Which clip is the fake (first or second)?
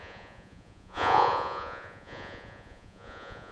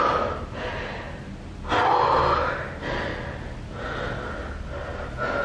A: first